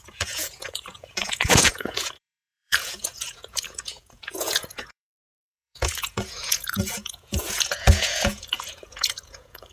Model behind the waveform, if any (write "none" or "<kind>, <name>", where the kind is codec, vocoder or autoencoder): vocoder, Vocos